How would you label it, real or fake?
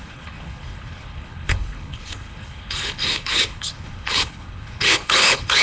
fake